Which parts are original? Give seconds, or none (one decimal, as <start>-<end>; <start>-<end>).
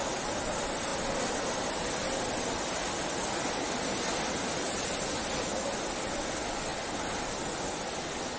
0.0-8.4